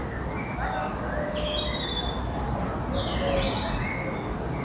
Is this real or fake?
real